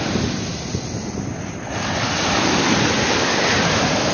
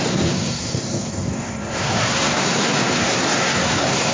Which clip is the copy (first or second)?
second